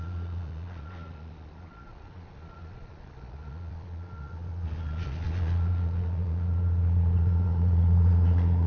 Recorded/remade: remade